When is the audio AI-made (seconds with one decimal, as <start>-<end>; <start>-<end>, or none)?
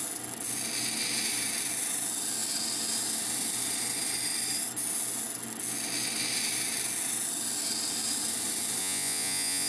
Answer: 8.8-9.7